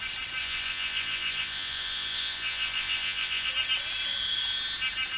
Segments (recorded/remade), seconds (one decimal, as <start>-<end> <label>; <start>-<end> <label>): 0.0-0.4 recorded; 0.4-3.5 remade; 3.5-5.2 recorded